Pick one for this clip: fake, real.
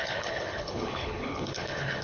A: fake